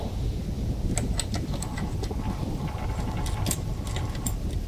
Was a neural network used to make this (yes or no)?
no